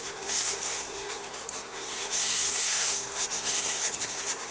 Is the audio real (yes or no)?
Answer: no